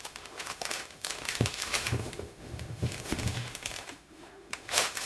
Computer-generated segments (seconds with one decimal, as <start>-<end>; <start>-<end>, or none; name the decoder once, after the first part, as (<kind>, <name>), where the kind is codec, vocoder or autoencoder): 0.0-5.1 (autoencoder, DAC-VAE)